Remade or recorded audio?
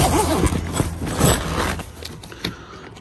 recorded